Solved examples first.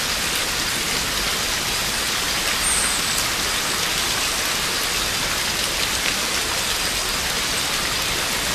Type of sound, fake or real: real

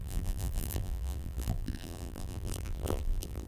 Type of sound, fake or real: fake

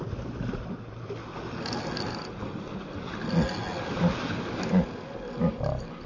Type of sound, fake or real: real